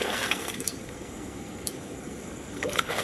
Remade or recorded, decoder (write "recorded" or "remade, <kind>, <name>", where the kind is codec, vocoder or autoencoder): remade, codec, SNAC